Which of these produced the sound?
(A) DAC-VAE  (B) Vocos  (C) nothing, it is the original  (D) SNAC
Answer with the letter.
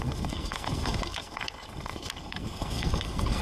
D